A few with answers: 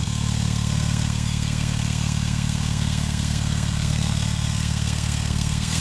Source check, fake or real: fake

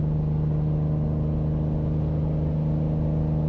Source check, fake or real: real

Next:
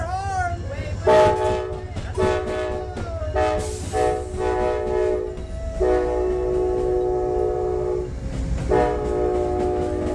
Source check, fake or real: real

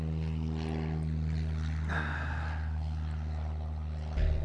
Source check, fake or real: real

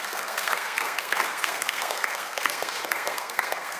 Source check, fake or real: fake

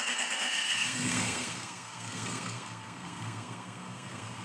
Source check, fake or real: fake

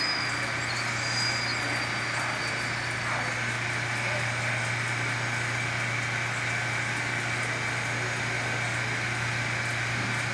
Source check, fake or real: real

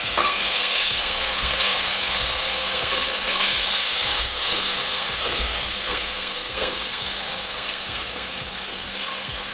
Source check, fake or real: fake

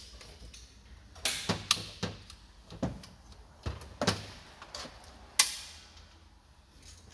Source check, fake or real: real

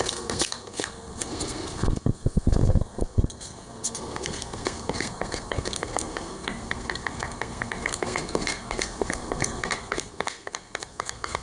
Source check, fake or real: fake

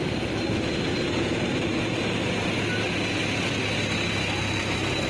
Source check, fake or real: real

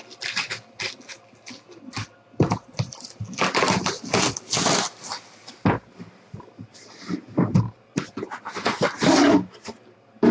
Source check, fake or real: real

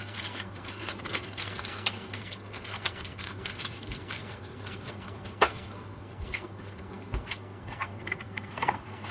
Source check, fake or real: fake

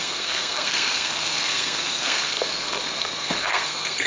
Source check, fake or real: fake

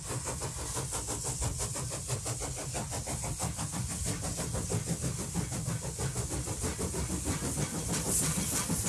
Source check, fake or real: real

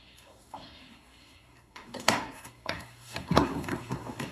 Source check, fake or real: fake